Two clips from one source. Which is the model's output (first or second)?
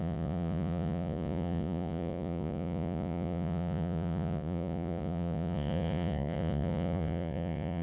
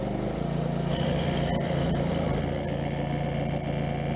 first